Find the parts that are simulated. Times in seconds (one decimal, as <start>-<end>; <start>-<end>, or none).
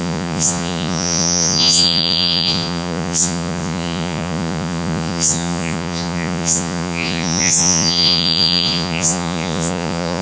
0.0-10.2